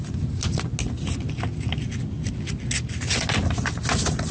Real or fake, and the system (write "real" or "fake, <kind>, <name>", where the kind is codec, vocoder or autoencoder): real